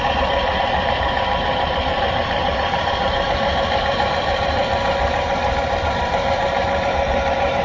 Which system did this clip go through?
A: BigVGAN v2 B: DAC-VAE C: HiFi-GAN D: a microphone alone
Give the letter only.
A